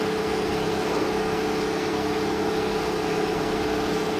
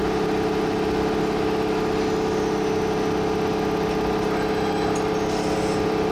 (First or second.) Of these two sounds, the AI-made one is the first